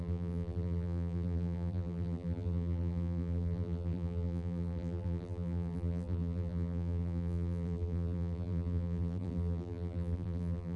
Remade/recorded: remade